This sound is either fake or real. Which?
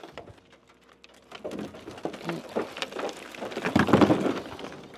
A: real